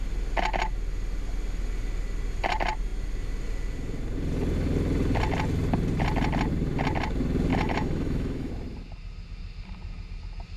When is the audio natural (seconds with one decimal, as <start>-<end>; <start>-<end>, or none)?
0.0-7.5; 8.5-10.6